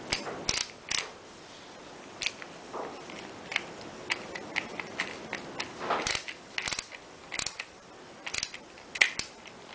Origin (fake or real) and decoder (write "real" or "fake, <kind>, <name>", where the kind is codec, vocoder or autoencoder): real